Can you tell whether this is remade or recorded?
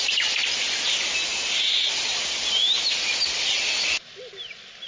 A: recorded